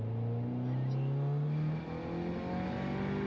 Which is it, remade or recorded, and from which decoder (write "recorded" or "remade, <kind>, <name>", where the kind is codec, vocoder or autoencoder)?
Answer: recorded